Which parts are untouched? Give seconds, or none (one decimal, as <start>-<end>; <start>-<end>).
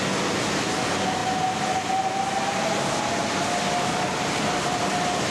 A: 0.0-5.3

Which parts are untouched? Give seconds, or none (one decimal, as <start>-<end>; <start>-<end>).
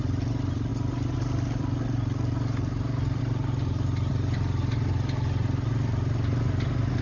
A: 0.0-7.0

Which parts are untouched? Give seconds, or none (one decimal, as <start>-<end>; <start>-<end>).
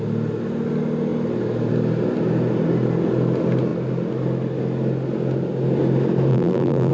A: 0.0-6.3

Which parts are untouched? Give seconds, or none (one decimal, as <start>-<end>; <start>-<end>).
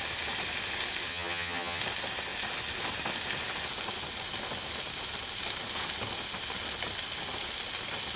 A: 0.0-1.1; 1.8-8.2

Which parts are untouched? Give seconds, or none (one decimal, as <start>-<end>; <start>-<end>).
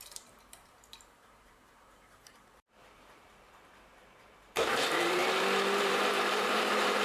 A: 5.2-5.8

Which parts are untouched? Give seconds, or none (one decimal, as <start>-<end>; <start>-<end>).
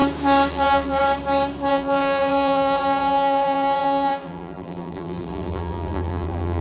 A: 0.0-0.5; 1.0-1.7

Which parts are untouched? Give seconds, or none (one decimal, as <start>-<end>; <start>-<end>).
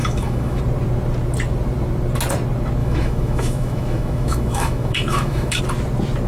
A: 0.6-2.8; 5.6-6.3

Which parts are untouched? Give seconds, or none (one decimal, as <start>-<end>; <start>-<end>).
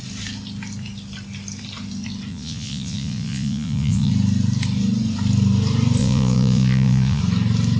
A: 0.0-2.3; 4.1-6.0; 7.2-7.8